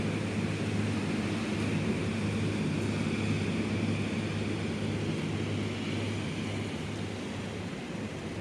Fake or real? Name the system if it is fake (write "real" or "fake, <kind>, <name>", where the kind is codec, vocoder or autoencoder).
real